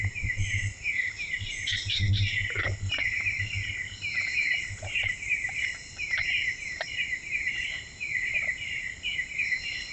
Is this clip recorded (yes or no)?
no